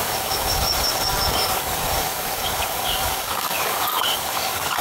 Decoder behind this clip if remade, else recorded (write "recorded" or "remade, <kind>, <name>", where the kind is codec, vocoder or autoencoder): remade, codec, DAC